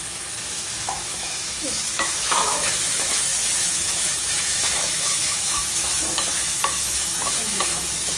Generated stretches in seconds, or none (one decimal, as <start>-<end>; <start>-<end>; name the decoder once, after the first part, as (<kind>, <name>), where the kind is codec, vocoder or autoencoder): 0.0-8.2 (autoencoder, DAC-VAE)